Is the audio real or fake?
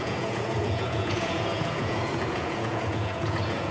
fake